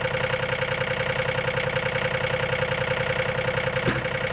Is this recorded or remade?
recorded